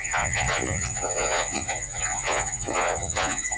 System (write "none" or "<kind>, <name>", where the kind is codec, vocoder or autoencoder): vocoder, Vocos